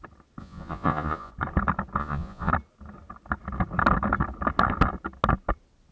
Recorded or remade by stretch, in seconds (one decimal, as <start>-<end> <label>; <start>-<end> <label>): 0.0-0.4 recorded; 0.4-1.3 remade; 1.3-2.0 recorded; 2.0-2.5 remade; 2.5-5.9 recorded